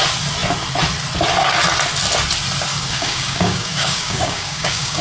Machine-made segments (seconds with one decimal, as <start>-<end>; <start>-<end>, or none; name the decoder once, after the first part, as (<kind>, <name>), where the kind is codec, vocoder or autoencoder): 2.7-5.0 (codec, DAC)